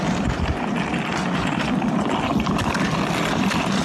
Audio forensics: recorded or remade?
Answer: remade